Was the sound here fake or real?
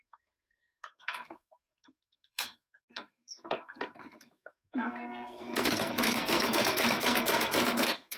fake